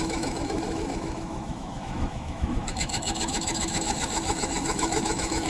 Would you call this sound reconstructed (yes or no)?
yes